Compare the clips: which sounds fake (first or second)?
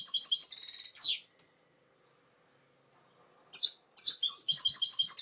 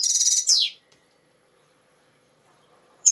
second